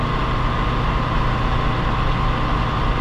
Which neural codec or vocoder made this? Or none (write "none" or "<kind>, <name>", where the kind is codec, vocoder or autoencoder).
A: none